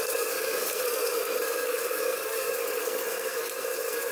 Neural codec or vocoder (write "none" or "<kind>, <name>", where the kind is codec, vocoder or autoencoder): codec, SNAC